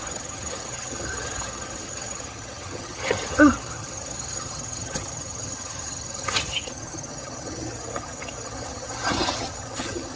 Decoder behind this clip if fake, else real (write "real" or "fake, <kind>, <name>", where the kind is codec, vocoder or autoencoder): fake, vocoder, HiFi-GAN